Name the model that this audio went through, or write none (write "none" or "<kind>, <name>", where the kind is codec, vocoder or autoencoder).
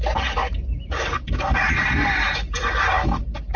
none